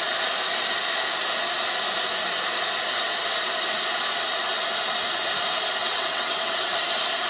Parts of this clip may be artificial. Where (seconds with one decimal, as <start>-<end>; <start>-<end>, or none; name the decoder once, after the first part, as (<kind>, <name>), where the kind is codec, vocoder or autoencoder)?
5.8-6.7 (vocoder, WaveNeXt)